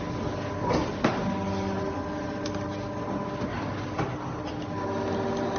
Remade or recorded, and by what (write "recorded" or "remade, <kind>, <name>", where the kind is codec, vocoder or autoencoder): recorded